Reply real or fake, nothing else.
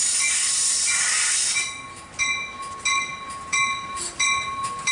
real